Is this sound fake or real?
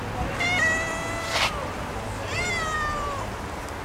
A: real